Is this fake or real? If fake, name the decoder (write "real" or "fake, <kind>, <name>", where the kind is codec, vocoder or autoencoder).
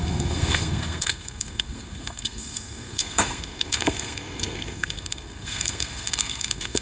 fake, codec, SNAC